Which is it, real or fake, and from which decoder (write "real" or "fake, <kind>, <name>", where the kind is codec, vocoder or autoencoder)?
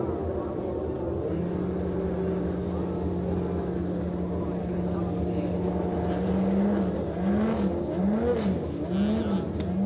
real